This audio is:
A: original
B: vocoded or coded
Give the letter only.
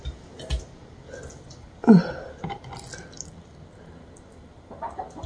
A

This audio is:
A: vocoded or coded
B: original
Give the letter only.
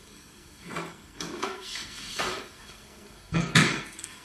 A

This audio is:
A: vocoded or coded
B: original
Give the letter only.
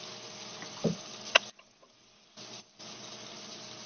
B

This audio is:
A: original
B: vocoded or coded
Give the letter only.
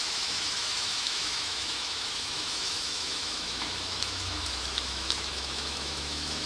B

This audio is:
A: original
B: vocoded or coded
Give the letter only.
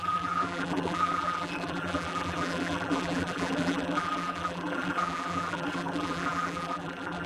B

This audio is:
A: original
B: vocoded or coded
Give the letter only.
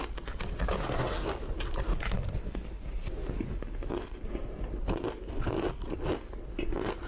A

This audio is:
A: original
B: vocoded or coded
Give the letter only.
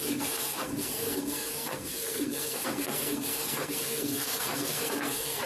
B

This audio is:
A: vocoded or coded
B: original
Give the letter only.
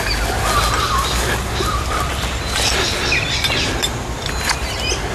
B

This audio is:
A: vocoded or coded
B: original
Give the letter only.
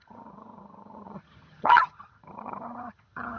A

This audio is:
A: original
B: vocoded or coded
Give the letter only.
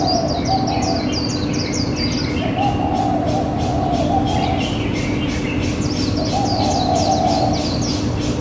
A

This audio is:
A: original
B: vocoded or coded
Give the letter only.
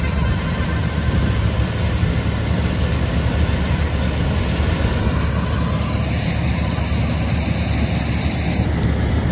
A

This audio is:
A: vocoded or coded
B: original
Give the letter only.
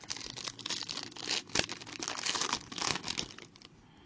B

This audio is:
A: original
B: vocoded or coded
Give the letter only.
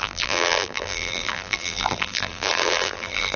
B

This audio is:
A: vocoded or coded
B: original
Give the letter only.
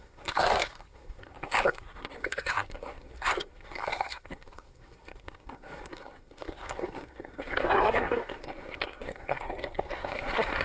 A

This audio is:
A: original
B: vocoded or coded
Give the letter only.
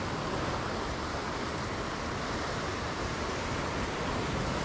A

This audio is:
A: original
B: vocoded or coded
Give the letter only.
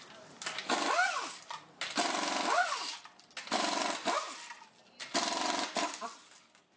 A